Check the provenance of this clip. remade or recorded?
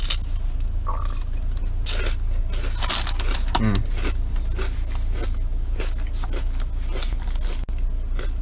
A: recorded